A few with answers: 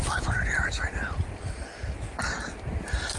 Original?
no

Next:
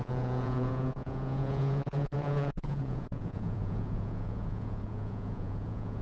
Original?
no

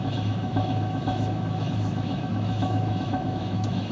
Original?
no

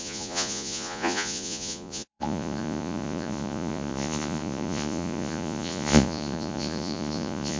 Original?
no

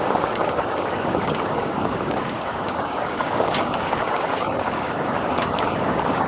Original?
no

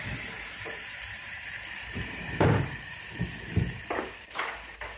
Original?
no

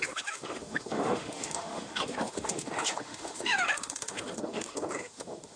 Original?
no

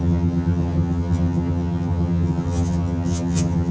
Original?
no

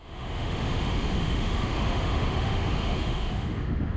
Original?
no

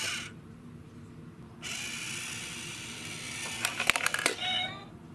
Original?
yes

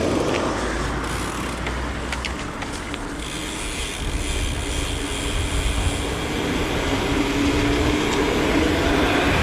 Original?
yes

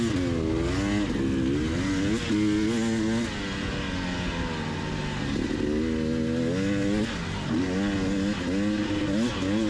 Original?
yes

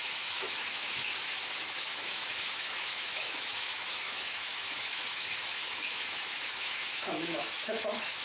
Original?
no